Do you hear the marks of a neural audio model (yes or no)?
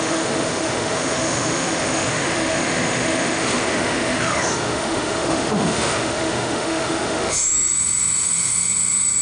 yes